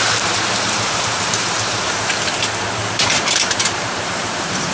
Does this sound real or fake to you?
fake